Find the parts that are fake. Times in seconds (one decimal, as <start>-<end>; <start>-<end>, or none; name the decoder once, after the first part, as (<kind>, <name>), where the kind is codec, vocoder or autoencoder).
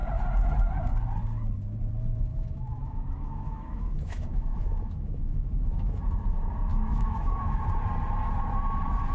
2.3-6.0 (autoencoder, DAC-VAE); 6.7-7.6